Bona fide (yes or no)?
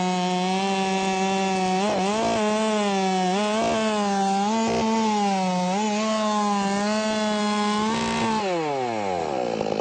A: yes